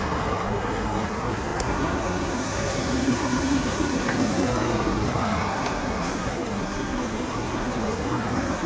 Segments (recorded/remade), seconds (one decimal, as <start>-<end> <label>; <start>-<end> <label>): 0.0-8.7 remade